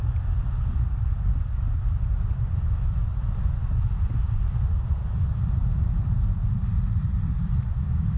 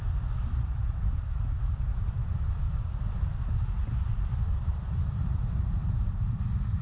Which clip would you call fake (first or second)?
second